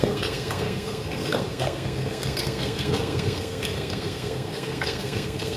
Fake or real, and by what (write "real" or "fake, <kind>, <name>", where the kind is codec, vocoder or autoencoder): fake, codec, SNAC